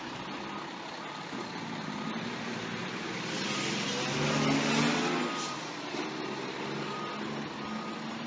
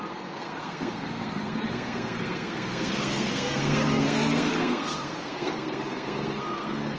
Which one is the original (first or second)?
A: first